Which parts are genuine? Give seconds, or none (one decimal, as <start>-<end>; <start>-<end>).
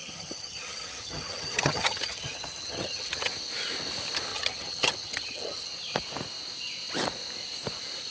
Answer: 3.3-4.3; 5.7-8.1